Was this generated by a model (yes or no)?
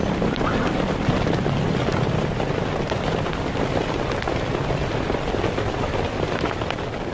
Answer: no